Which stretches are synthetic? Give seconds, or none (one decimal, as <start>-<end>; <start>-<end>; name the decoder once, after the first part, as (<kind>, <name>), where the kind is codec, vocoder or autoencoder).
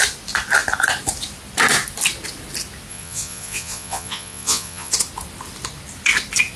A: 2.9-4.9 (vocoder, Vocos)